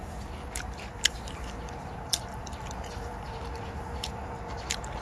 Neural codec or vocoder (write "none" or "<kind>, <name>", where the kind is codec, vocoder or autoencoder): vocoder, BigVGAN v2